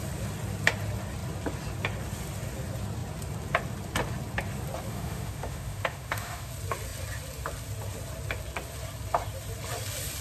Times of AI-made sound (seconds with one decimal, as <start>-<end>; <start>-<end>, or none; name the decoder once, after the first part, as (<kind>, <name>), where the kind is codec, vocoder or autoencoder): 4.9-6.5 (autoencoder, DAC-VAE)